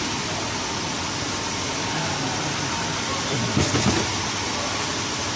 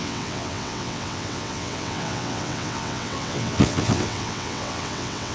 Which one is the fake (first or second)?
second